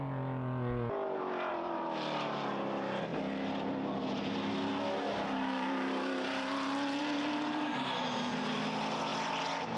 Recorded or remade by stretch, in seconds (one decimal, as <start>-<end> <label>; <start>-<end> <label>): 0.0-1.5 recorded; 1.5-2.5 remade; 2.5-9.8 recorded